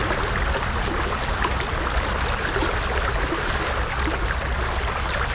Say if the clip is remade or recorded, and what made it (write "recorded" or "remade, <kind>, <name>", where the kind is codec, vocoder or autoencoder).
recorded